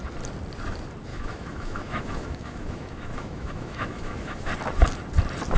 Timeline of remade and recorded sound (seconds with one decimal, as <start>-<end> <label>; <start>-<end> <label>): 0.0-1.1 recorded; 1.1-4.5 remade; 4.5-5.6 recorded

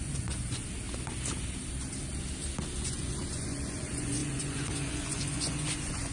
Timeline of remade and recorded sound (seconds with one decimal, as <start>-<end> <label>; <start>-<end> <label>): 0.0-0.6 remade; 0.6-2.8 recorded; 2.8-6.1 remade

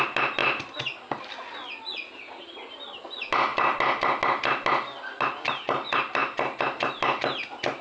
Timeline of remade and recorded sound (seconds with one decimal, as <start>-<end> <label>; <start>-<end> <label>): 0.0-7.8 recorded

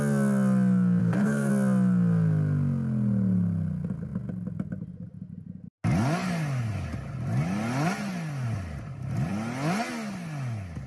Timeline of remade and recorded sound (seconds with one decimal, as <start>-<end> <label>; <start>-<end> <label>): 0.0-1.0 recorded; 1.0-1.5 remade; 1.5-10.9 recorded